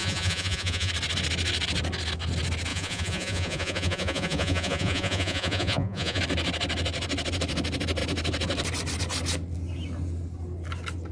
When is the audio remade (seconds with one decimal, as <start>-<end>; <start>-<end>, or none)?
0.0-0.9; 2.7-6.2